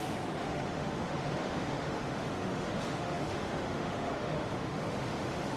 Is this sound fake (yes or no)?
yes